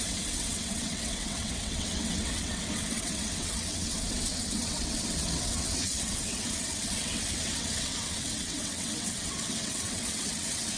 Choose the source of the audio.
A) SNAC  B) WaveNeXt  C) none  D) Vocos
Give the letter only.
B